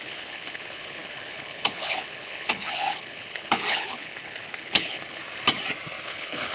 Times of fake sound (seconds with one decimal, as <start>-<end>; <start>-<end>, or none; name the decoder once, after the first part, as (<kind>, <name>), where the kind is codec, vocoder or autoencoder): 0.0-5.2 (codec, HILCodec); 6.0-6.5